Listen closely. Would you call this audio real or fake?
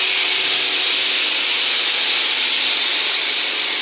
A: real